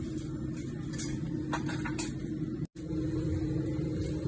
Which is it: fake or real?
real